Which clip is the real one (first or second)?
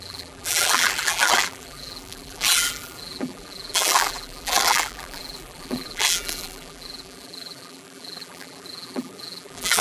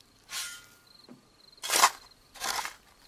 second